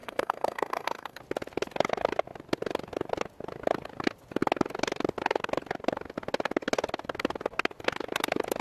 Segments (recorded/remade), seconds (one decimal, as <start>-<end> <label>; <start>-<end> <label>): 0.0-1.2 remade; 1.2-8.6 recorded